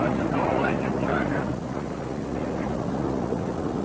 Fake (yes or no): yes